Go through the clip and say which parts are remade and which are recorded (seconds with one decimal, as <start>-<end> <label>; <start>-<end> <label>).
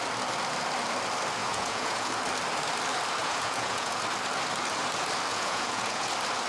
0.0-1.4 recorded; 1.4-2.1 remade; 2.1-3.2 recorded; 3.2-4.0 remade; 4.0-5.3 recorded; 5.3-6.1 remade; 6.1-6.5 recorded